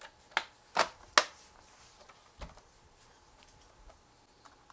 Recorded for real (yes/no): yes